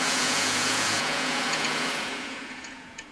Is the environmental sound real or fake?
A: fake